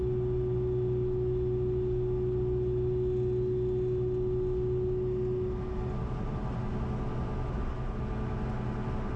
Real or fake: real